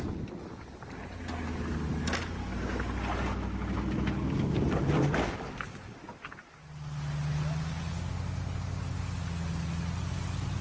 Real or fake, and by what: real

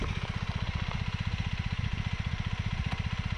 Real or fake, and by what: real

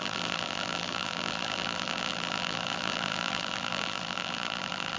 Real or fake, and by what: fake, vocoder, BigVGAN v2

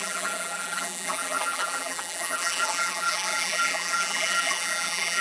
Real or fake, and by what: fake, vocoder, BigVGAN v2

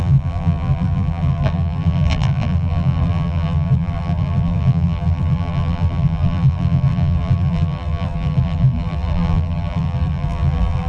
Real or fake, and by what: fake, vocoder, BigVGAN v2